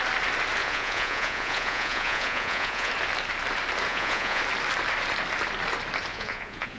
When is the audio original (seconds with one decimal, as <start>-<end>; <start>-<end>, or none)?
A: 0.0-0.6; 2.9-3.9; 4.4-6.1